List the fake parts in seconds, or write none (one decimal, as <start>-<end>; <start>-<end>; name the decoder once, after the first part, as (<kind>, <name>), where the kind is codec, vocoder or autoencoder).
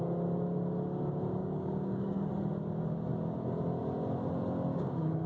1.4-2.3 (codec, DAC); 4.7-5.3